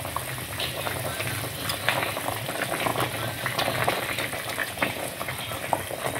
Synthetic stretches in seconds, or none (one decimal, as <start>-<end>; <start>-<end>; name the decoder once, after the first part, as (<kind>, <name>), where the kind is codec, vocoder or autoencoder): 4.6-5.3 (vocoder, Vocos)